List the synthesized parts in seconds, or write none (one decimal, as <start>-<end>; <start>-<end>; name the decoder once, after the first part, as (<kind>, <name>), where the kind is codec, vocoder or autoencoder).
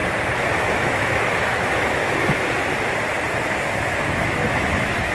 0.5-2.0 (autoencoder, DAC-VAE); 4.1-5.1